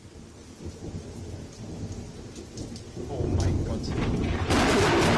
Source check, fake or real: real